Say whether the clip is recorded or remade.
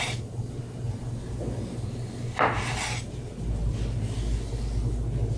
recorded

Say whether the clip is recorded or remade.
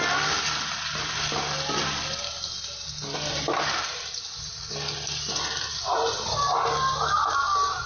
recorded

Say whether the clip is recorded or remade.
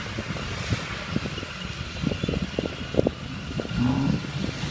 recorded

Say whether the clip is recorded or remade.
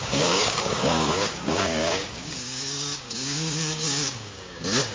remade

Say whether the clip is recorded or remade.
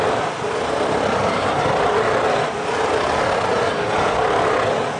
recorded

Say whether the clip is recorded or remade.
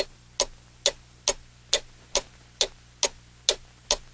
recorded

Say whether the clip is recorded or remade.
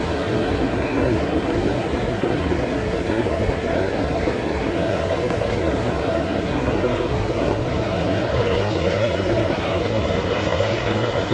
remade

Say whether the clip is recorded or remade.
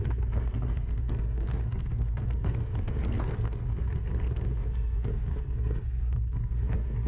remade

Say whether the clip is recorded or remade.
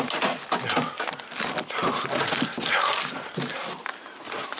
recorded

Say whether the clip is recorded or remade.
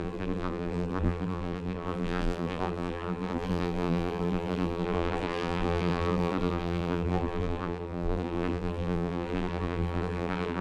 remade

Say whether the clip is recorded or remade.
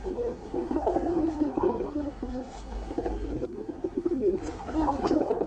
remade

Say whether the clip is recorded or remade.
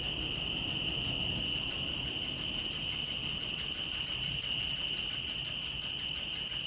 recorded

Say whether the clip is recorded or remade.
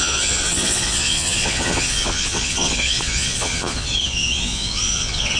remade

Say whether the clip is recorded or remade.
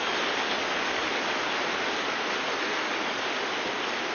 recorded